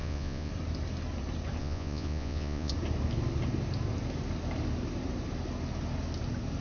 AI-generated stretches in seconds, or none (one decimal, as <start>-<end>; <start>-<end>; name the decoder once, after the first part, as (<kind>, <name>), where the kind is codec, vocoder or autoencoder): 0.0-0.5 (vocoder, Vocos); 1.6-2.7